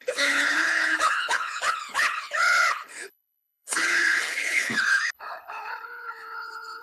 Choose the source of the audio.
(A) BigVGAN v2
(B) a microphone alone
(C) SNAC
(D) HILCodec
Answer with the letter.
D